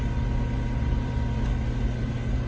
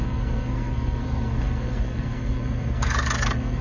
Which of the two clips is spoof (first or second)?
second